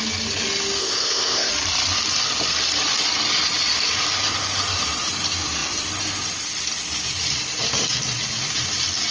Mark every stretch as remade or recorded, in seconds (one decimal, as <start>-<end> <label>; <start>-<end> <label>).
0.0-0.8 recorded; 0.8-1.5 remade; 1.5-9.1 recorded